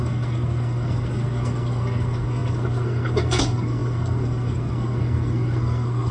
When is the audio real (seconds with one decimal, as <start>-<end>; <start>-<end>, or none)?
none